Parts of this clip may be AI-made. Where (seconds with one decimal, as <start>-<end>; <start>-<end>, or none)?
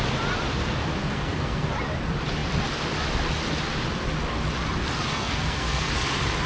1.0-1.7; 5.1-5.9